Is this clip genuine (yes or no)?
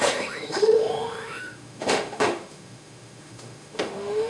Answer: no